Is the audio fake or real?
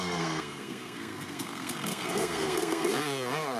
fake